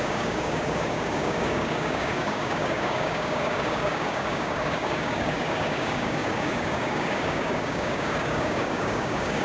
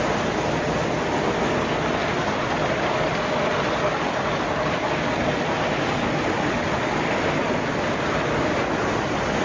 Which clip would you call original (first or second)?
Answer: second